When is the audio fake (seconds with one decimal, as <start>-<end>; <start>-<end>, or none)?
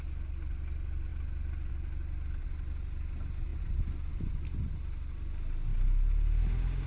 none